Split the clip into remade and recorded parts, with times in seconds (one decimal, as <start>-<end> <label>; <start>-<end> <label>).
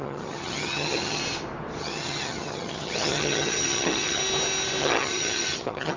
0.0-1.2 remade; 1.2-1.8 recorded; 1.8-4.2 remade; 4.2-4.8 recorded; 4.8-6.0 remade